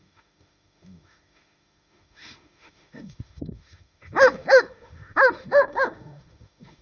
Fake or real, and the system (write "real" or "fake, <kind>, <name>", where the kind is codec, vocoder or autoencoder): fake, autoencoder, DAC-VAE